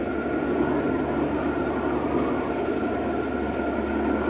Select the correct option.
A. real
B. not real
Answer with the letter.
A